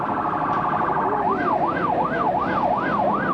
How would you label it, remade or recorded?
recorded